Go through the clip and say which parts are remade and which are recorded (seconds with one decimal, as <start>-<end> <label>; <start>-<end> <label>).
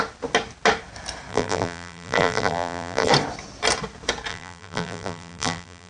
0.0-1.3 recorded; 1.3-3.1 remade; 3.1-4.3 recorded; 4.3-5.9 remade